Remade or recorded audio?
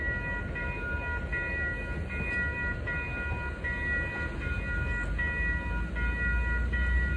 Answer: recorded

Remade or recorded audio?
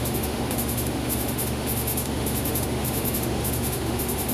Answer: remade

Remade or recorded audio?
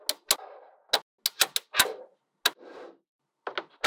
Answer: recorded